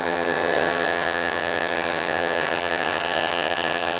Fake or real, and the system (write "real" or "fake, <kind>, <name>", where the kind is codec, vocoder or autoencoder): fake, vocoder, HiFi-GAN